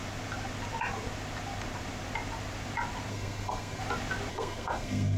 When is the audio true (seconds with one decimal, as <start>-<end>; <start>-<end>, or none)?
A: 0.0-3.1; 3.8-4.3